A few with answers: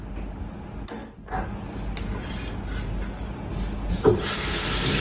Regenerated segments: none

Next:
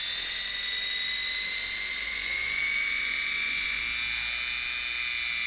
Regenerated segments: 1.9-3.8 (vocoder, Vocos)